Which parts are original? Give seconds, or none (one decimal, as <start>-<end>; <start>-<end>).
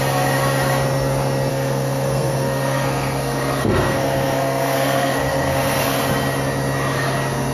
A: 0.0-1.5; 6.0-7.5